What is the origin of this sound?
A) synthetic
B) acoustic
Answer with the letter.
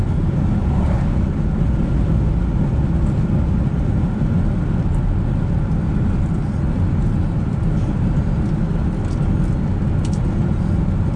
B